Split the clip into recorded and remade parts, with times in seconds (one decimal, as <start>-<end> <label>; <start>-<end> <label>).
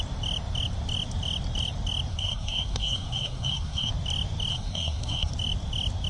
0.0-2.1 recorded; 2.1-3.9 remade; 3.9-4.5 recorded; 4.5-5.3 remade; 5.3-6.1 recorded